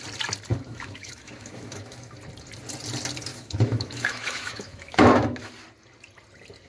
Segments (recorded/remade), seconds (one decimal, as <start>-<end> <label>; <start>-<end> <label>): 0.0-0.5 recorded; 0.5-2.2 remade; 2.2-3.3 recorded; 3.3-5.5 remade; 5.5-6.7 recorded